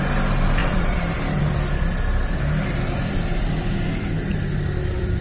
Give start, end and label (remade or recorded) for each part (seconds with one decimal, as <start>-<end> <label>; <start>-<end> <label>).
0.0-0.6 recorded; 0.6-3.7 remade; 3.7-4.3 recorded; 4.3-5.2 remade